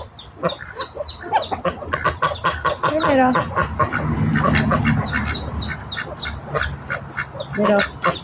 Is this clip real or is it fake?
real